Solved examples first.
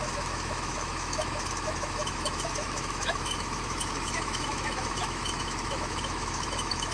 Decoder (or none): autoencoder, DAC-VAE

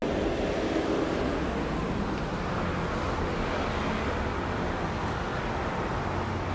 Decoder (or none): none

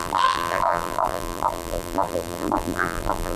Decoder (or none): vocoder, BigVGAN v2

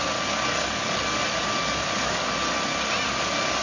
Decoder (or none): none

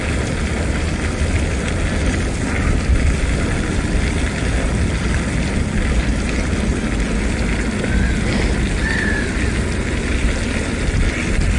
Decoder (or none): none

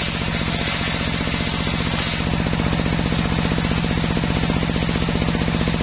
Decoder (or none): none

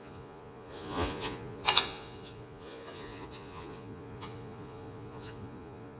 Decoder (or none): vocoder, Vocos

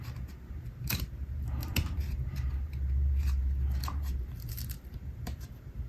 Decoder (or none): vocoder, BigVGAN v2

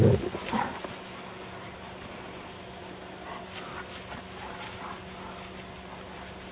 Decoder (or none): none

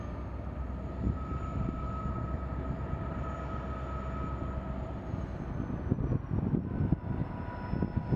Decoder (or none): none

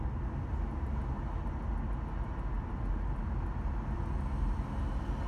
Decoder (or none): none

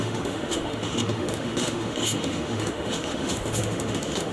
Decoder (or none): autoencoder, DAC-VAE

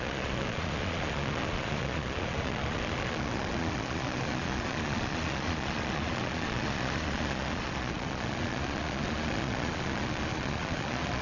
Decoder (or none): vocoder, Vocos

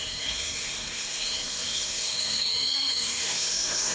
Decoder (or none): codec, SNAC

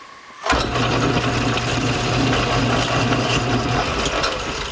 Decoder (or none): none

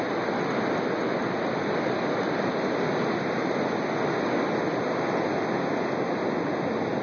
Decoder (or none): none